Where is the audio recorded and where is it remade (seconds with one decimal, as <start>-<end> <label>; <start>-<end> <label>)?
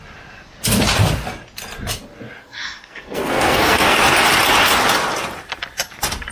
0.0-2.4 recorded; 2.4-4.0 remade; 4.0-6.3 recorded